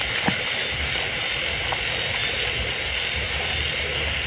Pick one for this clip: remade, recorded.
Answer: recorded